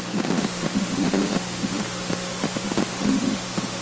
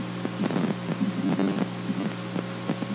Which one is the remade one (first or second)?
first